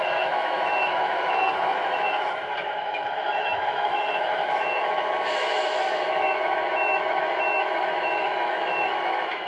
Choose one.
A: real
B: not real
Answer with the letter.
B